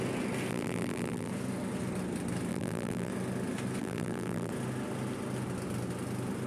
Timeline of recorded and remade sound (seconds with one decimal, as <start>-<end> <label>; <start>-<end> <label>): 0.0-0.5 recorded; 0.5-1.3 remade; 1.3-2.5 recorded; 2.5-3.1 remade; 3.1-3.8 recorded; 3.8-4.5 remade; 4.5-6.5 recorded

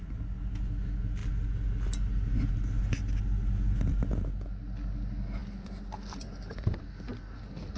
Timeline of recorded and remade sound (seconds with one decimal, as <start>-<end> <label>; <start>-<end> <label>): 0.0-5.4 recorded; 5.4-6.8 remade; 6.8-7.8 recorded

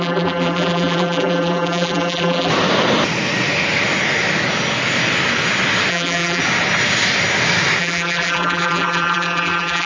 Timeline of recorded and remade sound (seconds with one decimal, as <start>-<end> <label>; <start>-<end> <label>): 0.0-2.5 remade; 2.5-5.9 recorded; 5.9-6.4 remade; 6.4-7.8 recorded; 7.8-9.9 remade

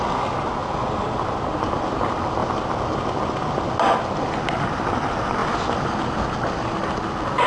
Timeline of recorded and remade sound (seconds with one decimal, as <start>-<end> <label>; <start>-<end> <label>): 0.0-7.5 recorded

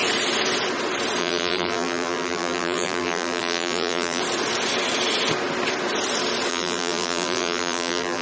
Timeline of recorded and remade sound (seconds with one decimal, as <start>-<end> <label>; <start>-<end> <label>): 0.0-1.2 recorded; 1.2-4.2 remade; 4.2-6.5 recorded; 6.5-8.2 remade

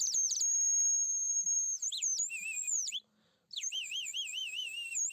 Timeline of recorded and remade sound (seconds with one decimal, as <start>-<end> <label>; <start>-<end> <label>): 0.0-5.1 remade

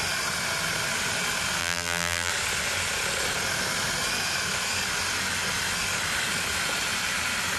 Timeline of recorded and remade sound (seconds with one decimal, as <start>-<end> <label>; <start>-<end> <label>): 0.0-1.6 recorded; 1.6-2.3 remade; 2.3-7.6 recorded